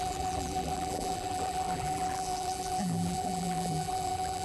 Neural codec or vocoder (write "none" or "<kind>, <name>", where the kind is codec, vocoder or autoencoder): vocoder, BigVGAN v2